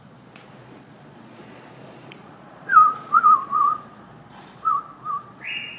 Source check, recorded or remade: remade